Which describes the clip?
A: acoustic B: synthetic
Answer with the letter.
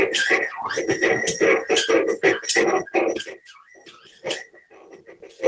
A